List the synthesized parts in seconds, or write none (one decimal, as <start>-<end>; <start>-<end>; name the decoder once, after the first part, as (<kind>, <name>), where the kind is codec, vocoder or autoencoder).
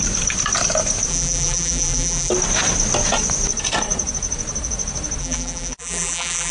1.1-2.3 (vocoder, BigVGAN v2); 5.2-6.5